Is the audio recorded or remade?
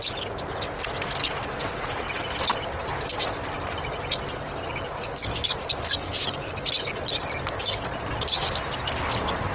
recorded